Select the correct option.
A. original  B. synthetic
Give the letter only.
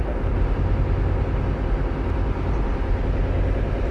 A